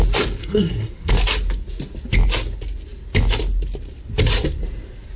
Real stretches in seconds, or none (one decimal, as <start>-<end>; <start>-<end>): 0.0-0.4; 1.1-5.2